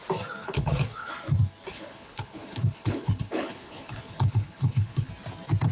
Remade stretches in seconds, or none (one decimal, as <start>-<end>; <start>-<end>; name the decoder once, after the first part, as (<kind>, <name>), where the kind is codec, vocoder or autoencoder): 0.4-1.1 (codec, HILCodec); 1.7-5.1